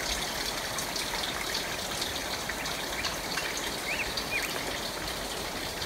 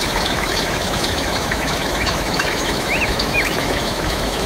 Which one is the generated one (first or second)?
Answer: second